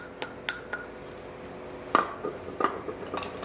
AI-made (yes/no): no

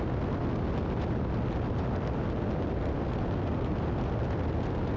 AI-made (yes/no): no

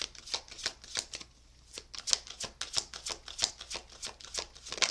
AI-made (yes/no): no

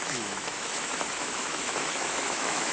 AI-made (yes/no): yes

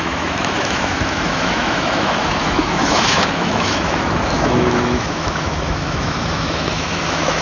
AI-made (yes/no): yes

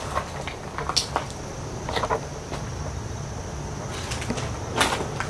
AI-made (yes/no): no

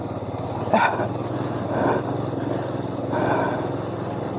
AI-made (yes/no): no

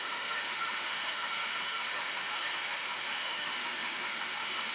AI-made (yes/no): yes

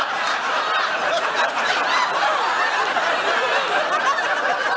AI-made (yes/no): no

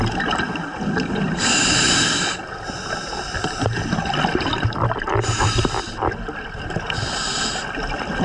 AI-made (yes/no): no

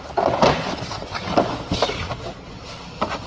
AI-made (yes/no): no